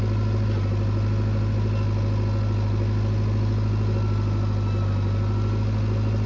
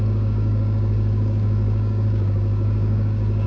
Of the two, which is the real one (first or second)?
first